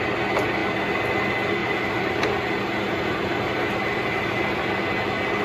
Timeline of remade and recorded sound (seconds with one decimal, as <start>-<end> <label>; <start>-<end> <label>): 0.0-1.6 recorded; 1.6-4.8 remade; 4.8-5.4 recorded